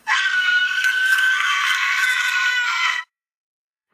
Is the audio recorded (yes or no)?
no